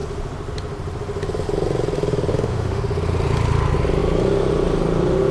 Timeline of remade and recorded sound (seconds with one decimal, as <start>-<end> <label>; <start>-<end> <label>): 0.0-2.3 recorded; 2.3-2.8 remade; 2.8-5.3 recorded